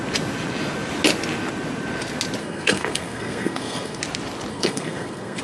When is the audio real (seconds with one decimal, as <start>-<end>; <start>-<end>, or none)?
0.0-2.4; 4.0-4.5